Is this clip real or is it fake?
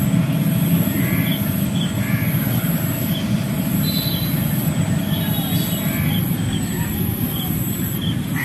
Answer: real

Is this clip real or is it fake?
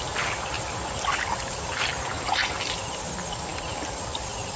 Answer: real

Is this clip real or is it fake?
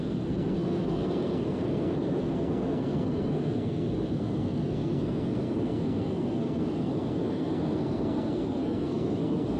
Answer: fake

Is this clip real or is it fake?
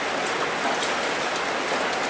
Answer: real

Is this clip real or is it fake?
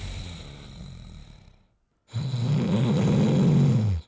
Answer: real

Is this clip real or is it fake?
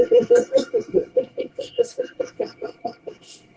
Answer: fake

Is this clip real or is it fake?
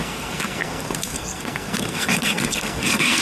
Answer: fake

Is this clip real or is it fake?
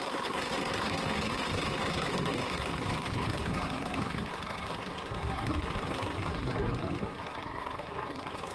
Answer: fake